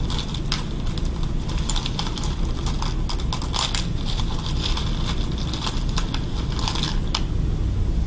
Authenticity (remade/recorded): recorded